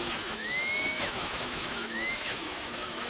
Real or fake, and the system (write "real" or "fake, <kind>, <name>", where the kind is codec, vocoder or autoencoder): fake, autoencoder, DAC-VAE